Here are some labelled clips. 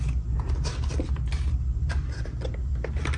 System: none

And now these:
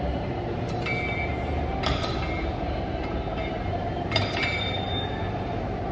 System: vocoder, BigVGAN v2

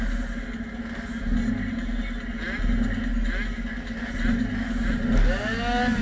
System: none